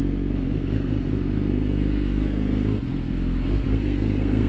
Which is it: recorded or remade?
remade